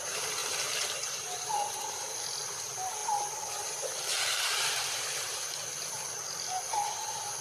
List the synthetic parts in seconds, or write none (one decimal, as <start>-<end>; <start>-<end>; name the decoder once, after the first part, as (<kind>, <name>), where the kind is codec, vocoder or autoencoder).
0.4-1.5 (vocoder, BigVGAN v2); 3.0-5.9